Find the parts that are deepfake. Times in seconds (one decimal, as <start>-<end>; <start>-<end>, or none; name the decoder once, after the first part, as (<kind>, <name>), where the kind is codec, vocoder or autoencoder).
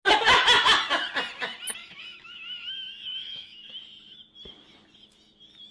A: 1.8-3.7 (autoencoder, DAC-VAE)